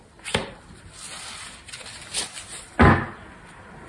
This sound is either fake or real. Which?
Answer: real